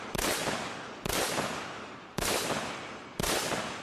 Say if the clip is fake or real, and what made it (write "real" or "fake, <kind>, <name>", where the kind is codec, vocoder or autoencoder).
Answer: fake, vocoder, BigVGAN v2